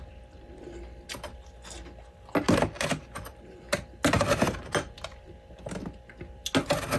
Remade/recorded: recorded